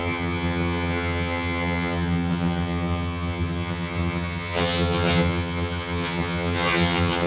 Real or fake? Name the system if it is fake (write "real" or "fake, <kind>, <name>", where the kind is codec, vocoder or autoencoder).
fake, vocoder, HiFi-GAN